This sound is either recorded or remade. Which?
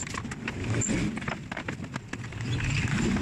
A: recorded